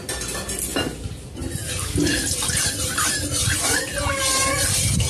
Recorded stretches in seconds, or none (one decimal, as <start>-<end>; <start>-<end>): 0.0-5.1